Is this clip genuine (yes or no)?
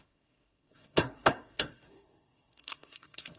no